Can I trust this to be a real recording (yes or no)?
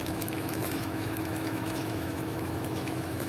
no